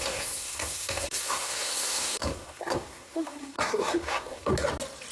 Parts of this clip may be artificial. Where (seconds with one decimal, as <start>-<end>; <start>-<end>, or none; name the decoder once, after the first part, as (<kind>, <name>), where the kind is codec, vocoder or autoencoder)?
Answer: 0.0-4.5 (codec, SNAC)